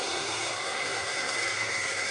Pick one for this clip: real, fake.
fake